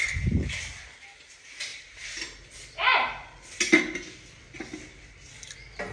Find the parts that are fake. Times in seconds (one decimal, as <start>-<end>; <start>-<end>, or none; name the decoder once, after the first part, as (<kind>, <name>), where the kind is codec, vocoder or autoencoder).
none